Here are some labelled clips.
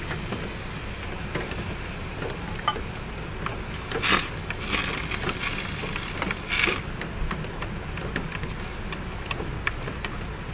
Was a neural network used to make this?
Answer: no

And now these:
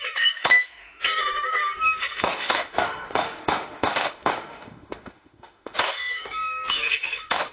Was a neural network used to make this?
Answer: yes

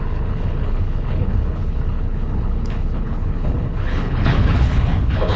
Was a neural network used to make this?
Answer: yes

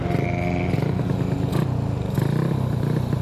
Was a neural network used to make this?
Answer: no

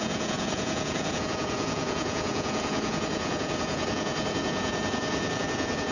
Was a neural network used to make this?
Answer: yes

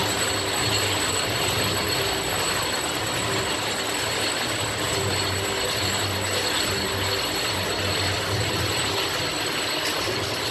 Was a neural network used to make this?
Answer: no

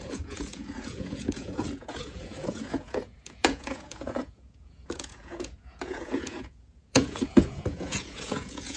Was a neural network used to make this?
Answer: yes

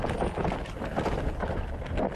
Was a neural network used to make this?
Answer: no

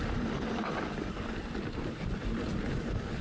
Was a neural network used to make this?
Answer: no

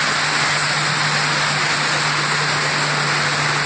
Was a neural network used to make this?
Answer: no